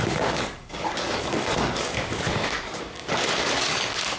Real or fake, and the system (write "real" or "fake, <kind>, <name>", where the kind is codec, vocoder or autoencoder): fake, codec, DAC